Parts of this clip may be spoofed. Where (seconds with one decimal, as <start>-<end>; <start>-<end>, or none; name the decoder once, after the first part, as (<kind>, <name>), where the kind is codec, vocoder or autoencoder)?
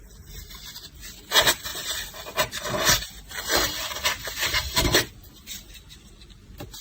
1.7-5.8 (vocoder, BigVGAN v2)